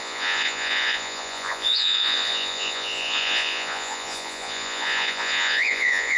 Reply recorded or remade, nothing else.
remade